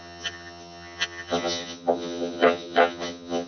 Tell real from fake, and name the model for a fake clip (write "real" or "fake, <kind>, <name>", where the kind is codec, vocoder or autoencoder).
fake, vocoder, HiFi-GAN